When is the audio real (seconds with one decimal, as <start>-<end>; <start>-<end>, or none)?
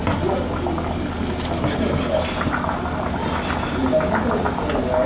0.0-5.1